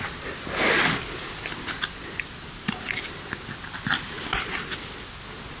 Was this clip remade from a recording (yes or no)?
no